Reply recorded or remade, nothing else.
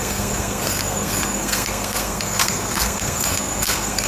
remade